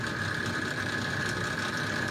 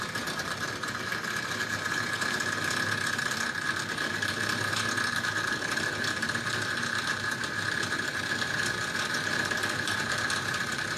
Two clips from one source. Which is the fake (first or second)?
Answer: second